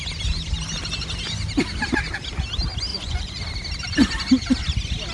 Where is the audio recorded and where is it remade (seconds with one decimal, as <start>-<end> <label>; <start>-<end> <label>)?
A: 0.0-2.9 recorded; 2.9-3.4 remade; 3.4-5.1 recorded